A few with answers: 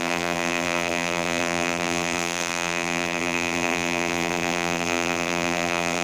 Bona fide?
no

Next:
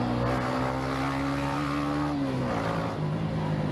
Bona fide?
yes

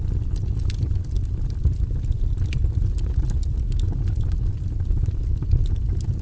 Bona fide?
yes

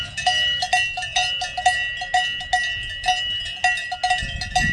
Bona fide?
yes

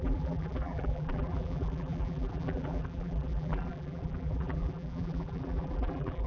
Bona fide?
no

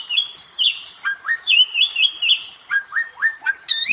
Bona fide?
no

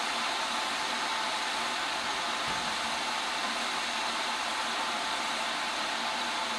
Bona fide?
no